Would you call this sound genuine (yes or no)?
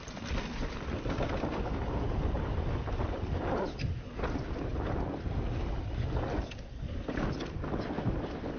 yes